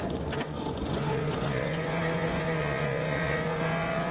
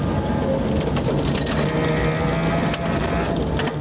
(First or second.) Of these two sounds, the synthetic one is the first